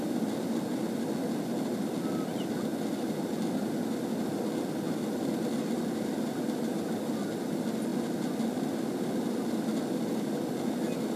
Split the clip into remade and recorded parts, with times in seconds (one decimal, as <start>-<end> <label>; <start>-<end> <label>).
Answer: 0.0-11.2 recorded